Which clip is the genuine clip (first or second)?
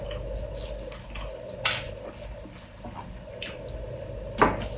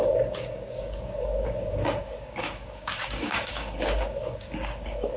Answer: first